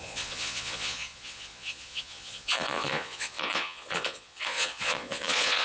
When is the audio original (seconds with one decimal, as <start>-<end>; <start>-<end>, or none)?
none